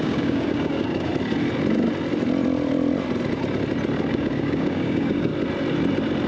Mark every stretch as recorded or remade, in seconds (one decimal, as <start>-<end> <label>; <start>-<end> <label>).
0.0-1.1 remade; 1.1-4.1 recorded; 4.1-5.3 remade; 5.3-6.3 recorded